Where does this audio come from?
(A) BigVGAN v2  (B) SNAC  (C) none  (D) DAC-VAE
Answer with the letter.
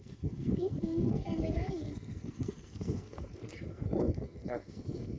B